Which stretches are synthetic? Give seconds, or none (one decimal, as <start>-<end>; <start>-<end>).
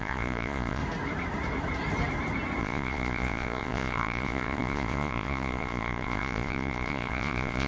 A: 0.0-0.8; 2.6-7.7